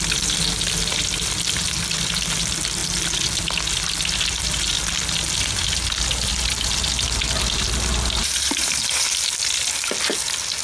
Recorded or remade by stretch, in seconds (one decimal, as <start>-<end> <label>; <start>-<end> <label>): 0.0-8.2 recorded; 8.2-9.0 remade; 9.0-10.6 recorded